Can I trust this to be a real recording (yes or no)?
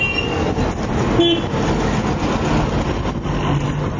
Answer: yes